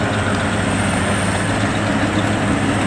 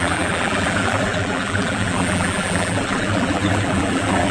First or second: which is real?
first